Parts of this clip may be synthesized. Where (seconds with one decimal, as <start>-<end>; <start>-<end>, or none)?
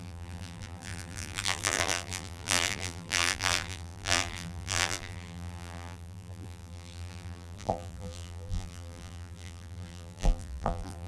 0.0-11.1